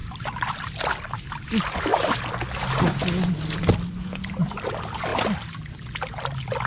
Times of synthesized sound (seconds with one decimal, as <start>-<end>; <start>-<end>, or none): 0.0-0.5